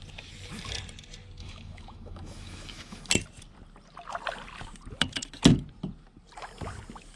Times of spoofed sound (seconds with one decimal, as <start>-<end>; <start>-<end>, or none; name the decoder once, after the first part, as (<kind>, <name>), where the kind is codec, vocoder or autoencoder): 1.4-3.1 (autoencoder, DAC-VAE)